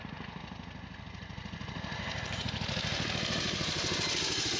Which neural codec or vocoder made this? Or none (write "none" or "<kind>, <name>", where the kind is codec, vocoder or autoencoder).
none